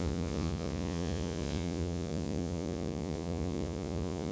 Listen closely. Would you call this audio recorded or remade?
remade